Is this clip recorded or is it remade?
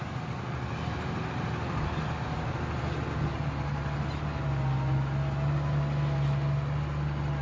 recorded